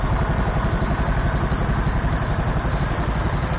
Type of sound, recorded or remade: recorded